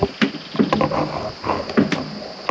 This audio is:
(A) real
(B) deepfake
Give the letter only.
A